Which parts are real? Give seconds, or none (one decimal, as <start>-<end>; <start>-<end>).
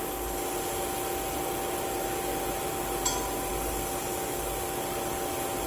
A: 0.0-5.7